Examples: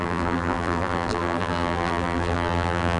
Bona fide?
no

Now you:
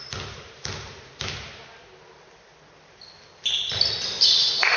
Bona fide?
yes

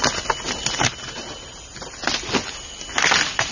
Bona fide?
yes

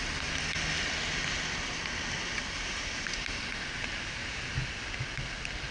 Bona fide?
yes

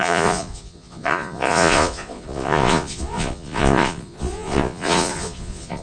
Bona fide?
no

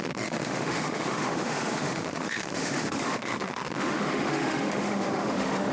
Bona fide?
no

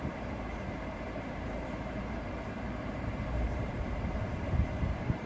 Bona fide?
no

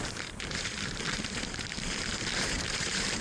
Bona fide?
no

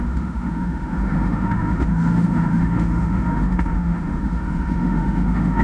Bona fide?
no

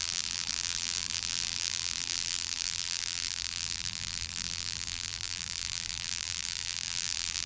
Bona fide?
no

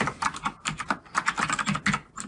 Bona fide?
yes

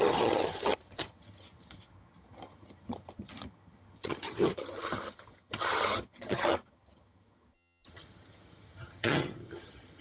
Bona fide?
no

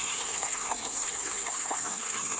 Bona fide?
no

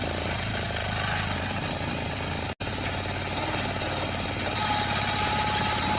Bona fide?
yes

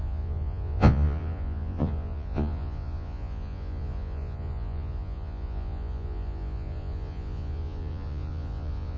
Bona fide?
no